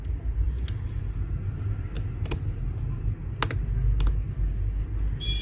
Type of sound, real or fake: real